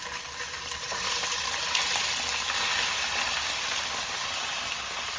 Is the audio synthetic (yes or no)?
no